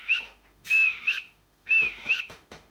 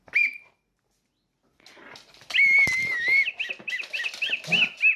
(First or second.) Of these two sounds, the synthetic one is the first